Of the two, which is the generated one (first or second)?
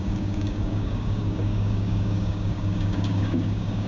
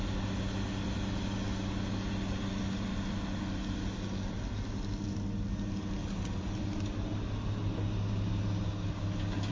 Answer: first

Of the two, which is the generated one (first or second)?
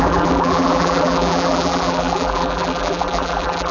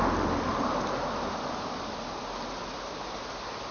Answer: first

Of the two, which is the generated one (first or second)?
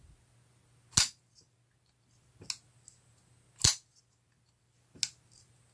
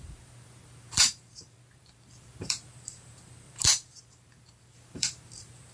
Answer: second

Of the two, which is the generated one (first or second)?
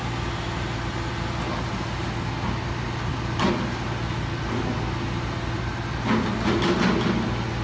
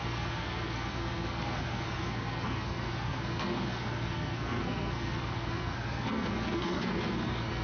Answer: second